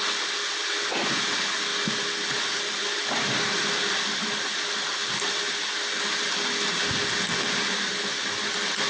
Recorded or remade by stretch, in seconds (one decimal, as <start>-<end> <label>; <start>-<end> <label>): 0.0-8.9 recorded